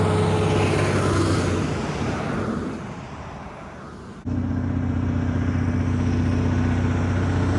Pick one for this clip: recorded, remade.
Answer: recorded